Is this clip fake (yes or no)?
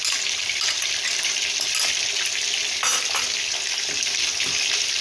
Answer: no